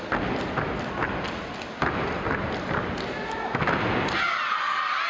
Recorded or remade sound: recorded